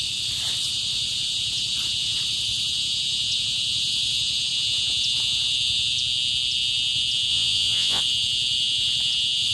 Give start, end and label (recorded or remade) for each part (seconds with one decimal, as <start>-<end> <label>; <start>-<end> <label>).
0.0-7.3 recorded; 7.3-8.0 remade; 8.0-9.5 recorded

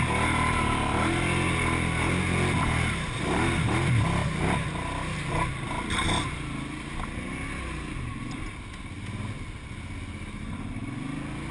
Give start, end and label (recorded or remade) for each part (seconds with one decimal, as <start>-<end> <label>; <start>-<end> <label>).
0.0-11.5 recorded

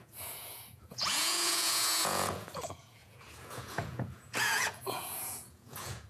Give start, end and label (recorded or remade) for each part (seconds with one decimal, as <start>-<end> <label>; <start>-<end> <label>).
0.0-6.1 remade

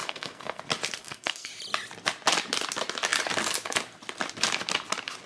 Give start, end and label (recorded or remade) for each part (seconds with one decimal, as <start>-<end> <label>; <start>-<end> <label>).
0.0-0.6 remade; 0.6-1.0 recorded; 1.0-1.5 remade; 1.5-5.3 recorded

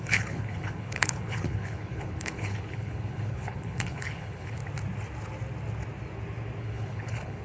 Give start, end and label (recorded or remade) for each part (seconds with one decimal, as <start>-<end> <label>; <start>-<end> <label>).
0.0-4.6 remade; 4.6-6.6 recorded; 6.6-7.4 remade

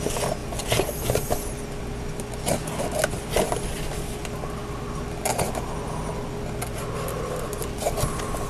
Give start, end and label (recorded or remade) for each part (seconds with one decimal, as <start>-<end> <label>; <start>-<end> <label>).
0.0-8.5 recorded